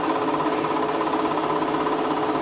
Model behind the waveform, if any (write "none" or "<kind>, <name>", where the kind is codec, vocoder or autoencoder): none